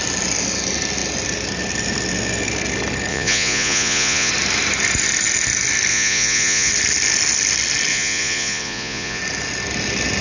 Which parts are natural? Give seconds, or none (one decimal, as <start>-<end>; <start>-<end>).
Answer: 0.0-3.1; 4.3-5.9; 6.7-7.9; 9.2-10.2